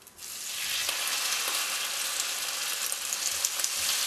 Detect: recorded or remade recorded